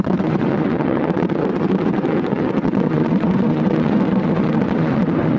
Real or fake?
fake